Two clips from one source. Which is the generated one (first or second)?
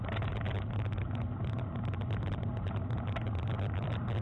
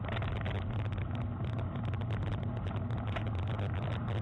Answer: first